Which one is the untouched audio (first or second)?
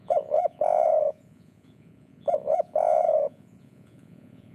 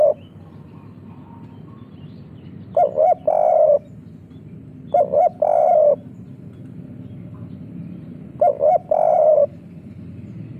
second